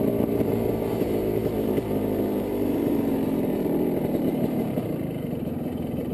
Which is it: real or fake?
fake